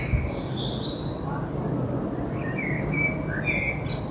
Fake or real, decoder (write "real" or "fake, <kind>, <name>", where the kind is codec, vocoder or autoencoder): real